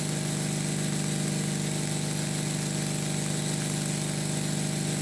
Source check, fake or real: real